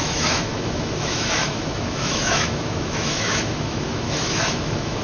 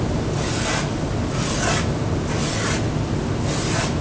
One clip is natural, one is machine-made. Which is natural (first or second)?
second